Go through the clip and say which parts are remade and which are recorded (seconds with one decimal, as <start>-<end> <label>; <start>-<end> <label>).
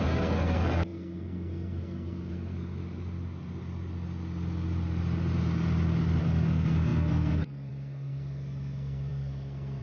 0.0-2.8 remade; 2.8-6.2 recorded; 6.2-9.8 remade